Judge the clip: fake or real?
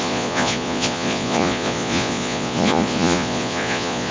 fake